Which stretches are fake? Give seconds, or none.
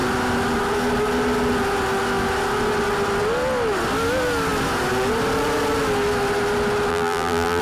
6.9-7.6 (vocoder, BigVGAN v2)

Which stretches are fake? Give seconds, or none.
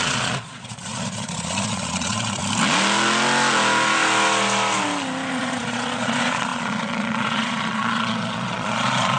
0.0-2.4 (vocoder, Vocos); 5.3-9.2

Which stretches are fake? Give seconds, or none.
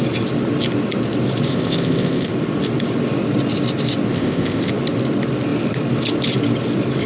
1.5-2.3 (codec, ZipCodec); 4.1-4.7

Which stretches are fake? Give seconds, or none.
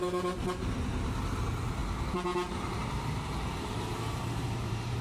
0.0-5.0 (vocoder, BigVGAN v2)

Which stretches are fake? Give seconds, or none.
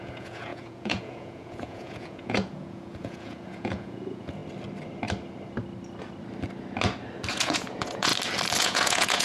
0.0-4.4 (vocoder, Vocos); 7.3-8.1; 8.6-9.2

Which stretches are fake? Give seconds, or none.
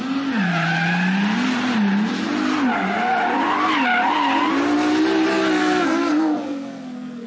5.6-7.3 (codec, SNAC)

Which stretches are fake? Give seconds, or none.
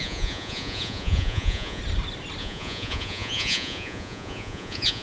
0.0-1.8 (vocoder, Vocos); 2.4-5.0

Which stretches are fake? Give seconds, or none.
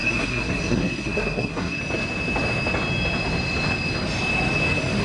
0.0-1.8 (codec, SNAC)